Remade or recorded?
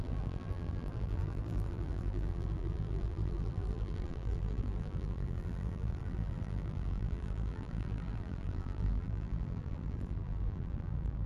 remade